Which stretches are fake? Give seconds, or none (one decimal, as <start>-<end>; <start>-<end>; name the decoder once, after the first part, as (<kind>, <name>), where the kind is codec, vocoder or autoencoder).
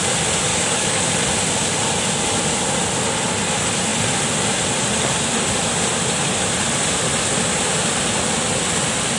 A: 0.5-1.1 (codec, DAC)